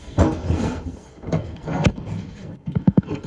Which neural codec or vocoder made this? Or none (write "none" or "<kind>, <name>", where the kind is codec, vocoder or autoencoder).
codec, SNAC